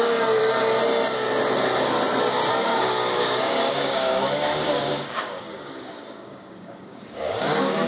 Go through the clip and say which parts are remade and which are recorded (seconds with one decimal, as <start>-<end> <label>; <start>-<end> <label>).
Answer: 0.0-0.4 remade; 0.4-2.5 recorded; 2.5-7.9 remade